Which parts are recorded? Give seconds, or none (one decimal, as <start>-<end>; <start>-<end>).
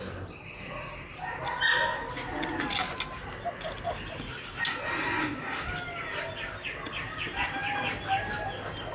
0.0-8.9